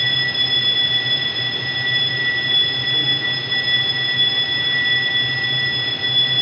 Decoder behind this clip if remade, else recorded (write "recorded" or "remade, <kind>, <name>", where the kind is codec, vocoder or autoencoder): recorded